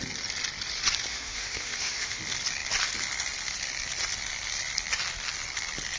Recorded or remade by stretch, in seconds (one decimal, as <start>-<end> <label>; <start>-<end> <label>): 0.0-1.1 recorded; 1.1-2.2 remade; 2.2-6.0 recorded